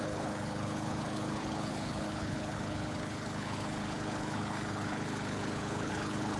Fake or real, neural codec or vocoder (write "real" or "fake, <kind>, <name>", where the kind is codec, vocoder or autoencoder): fake, codec, HILCodec